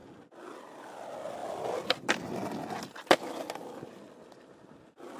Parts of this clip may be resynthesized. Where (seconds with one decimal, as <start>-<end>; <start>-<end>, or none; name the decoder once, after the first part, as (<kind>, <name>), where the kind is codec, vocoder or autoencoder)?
none